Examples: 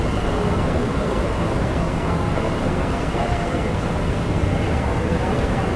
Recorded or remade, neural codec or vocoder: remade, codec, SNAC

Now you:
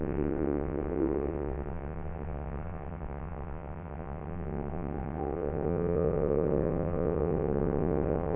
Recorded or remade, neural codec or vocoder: remade, vocoder, WaveNeXt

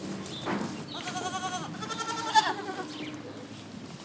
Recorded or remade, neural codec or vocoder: recorded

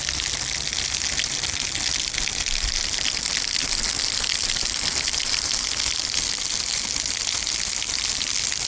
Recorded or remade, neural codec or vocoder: recorded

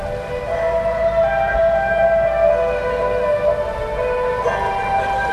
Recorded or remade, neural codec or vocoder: recorded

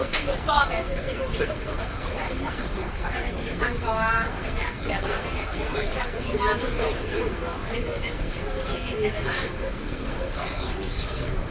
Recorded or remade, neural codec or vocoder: remade, codec, SNAC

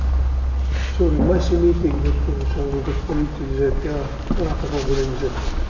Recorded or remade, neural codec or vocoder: recorded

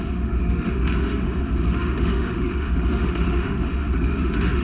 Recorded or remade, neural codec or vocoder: remade, autoencoder, DAC-VAE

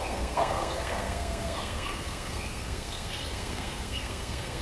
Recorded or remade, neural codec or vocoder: remade, codec, SNAC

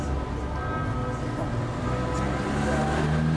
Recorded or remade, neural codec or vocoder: recorded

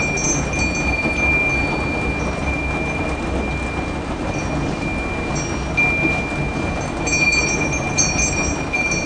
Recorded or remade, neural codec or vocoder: recorded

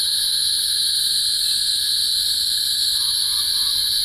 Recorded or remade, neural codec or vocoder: recorded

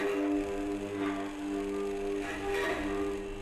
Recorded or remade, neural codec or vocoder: recorded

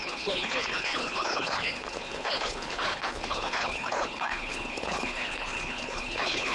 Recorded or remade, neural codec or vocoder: remade, codec, HILCodec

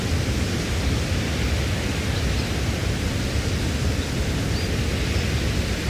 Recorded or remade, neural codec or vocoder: recorded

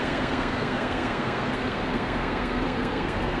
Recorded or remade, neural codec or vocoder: remade, codec, SNAC